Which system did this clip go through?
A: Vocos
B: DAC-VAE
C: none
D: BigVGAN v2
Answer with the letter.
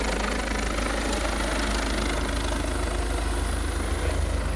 C